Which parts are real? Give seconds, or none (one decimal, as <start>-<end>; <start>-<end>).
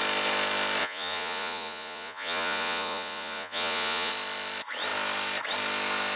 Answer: 0.0-0.8; 4.1-6.2